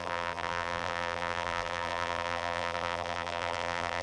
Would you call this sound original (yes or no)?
no